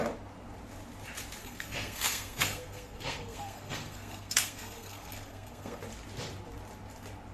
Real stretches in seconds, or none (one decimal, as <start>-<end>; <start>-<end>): 0.0-1.4; 5.8-7.3